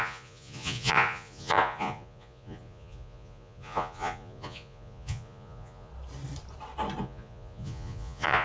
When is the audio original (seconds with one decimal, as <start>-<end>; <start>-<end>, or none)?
5.9-7.0